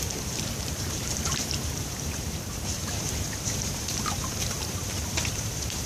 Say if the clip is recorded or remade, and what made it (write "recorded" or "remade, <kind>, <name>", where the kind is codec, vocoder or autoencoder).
remade, vocoder, BigVGAN v2